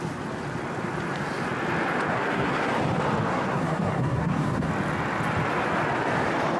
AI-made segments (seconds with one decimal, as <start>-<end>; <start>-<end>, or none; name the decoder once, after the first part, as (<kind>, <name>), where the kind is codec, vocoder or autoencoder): 2.1-2.7 (codec, SNAC); 3.3-4.7